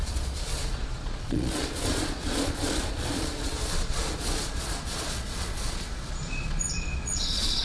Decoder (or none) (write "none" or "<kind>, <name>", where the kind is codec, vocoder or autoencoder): vocoder, Vocos